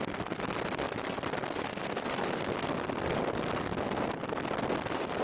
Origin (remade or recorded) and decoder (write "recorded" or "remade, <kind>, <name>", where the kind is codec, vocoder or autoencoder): remade, vocoder, BigVGAN v2